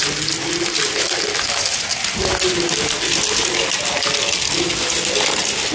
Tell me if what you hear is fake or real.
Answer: real